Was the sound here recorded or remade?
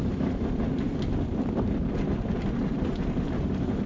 recorded